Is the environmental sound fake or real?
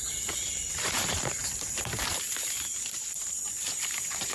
fake